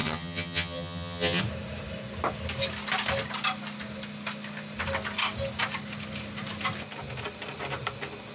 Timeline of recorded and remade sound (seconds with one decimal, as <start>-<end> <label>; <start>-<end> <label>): 0.0-1.4 remade; 1.4-8.3 recorded